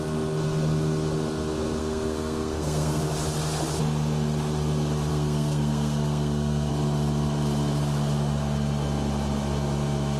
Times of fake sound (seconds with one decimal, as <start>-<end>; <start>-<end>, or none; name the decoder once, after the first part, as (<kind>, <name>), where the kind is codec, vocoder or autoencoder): 1.8-3.0 (codec, SNAC); 5.1-6.7